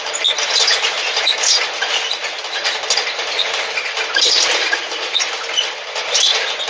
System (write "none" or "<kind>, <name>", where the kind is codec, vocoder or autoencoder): none